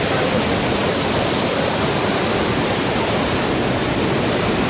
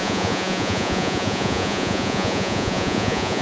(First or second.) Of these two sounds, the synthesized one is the second